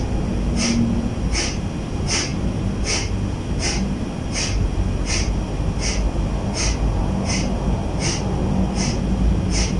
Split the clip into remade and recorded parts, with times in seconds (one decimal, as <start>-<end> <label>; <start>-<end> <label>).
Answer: 0.0-9.8 recorded